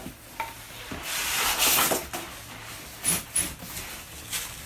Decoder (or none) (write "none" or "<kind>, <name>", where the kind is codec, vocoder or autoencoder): none